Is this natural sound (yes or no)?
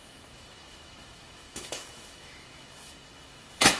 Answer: no